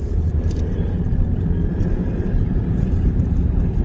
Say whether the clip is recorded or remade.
remade